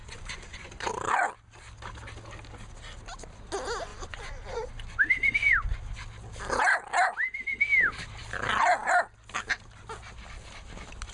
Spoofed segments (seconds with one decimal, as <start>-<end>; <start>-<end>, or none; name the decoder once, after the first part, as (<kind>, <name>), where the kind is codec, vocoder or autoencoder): 0.0-0.7 (vocoder, Vocos); 3.9-4.7